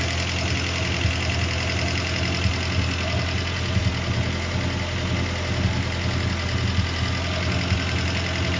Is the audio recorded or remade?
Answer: recorded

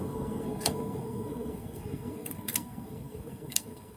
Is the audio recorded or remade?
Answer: remade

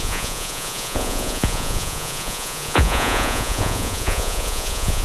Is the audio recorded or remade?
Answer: remade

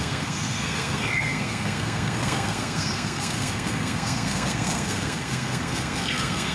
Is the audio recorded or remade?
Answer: remade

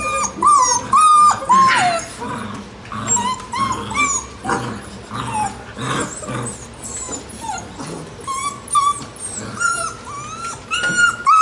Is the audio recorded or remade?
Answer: recorded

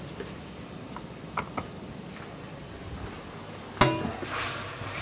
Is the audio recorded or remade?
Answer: recorded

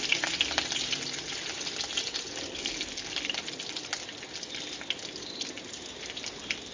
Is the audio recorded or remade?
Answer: recorded